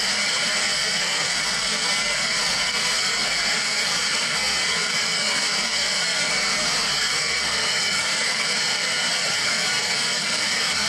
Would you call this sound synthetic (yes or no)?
yes